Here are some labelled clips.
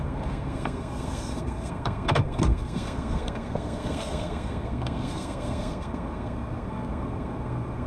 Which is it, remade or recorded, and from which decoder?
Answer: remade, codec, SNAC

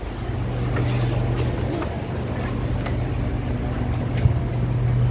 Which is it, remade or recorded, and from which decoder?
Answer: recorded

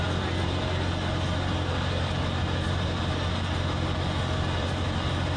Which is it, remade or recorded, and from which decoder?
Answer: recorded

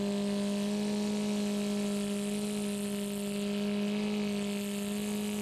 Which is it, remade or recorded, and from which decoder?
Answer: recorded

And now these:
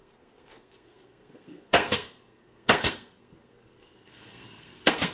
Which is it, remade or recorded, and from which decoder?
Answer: remade, codec, SNAC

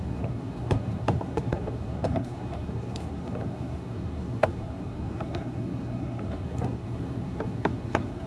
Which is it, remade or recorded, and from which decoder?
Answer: remade, codec, SNAC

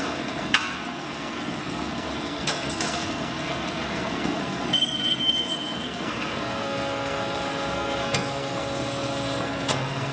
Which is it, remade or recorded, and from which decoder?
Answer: remade, codec, SNAC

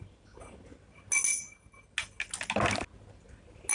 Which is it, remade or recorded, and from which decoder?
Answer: recorded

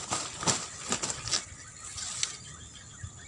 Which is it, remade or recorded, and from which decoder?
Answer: recorded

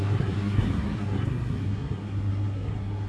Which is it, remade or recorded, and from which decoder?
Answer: remade, codec, SNAC